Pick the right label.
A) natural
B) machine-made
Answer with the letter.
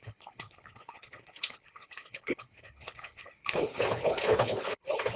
B